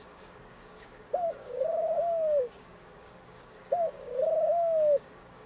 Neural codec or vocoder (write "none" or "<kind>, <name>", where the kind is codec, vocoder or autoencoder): codec, DAC